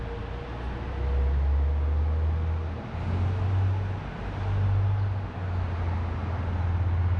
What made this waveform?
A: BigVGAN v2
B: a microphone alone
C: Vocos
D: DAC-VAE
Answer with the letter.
B